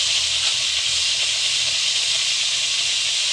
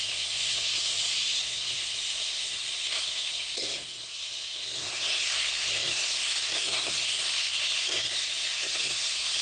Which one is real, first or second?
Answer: first